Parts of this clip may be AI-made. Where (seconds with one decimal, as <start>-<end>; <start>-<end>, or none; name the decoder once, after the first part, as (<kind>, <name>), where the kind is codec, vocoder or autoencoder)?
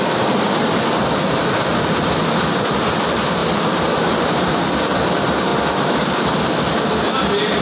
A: none